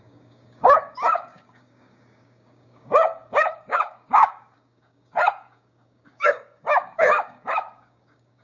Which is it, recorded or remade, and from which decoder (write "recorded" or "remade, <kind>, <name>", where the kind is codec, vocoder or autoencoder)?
remade, codec, DAC